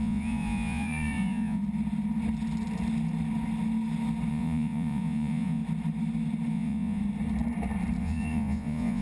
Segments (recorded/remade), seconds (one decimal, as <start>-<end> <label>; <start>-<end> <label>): 0.0-1.6 remade; 1.6-4.3 recorded; 4.3-5.6 remade; 5.6-6.5 recorded; 6.5-7.0 remade; 7.0-8.0 recorded; 8.0-9.0 remade